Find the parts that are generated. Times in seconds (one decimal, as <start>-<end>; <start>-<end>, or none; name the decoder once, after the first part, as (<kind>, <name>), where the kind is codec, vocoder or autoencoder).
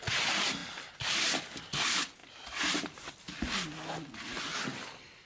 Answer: none